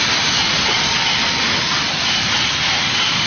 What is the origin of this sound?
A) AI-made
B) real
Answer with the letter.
B